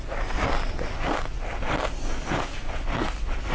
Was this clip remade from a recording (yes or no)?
no